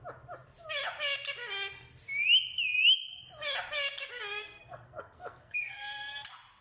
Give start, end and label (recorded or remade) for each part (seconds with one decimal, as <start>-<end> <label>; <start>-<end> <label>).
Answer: 0.0-4.4 recorded; 4.4-5.8 remade; 5.8-6.6 recorded